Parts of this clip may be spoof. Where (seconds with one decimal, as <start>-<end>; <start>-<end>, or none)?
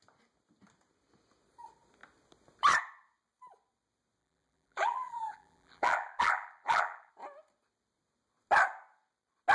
4.2-7.1